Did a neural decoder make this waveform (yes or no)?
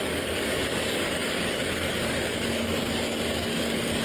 yes